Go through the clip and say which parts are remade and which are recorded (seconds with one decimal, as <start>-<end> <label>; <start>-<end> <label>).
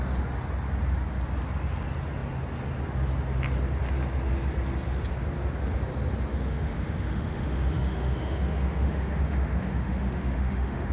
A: 0.0-6.3 recorded; 6.3-10.9 remade